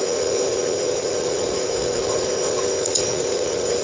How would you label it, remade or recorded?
remade